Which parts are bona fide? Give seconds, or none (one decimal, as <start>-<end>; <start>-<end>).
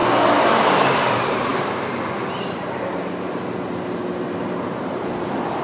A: 0.0-0.5; 1.5-4.8